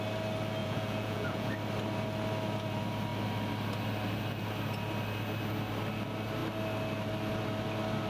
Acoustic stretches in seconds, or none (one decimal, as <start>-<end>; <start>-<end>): 0.0-0.6; 1.5-8.1